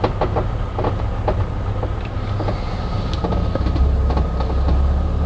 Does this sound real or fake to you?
real